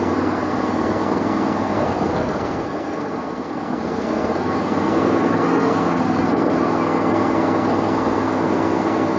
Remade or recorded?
remade